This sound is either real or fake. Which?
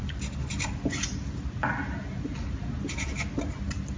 real